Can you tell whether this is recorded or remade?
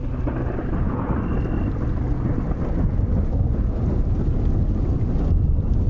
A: recorded